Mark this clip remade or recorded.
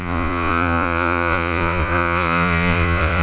remade